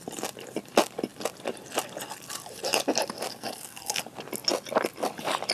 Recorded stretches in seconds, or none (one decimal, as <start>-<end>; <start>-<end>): 0.0-3.3; 4.0-5.5